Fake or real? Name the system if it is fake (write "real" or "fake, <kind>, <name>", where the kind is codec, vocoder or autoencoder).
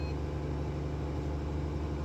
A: real